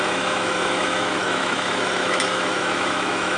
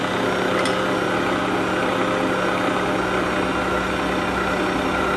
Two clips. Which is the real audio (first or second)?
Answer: second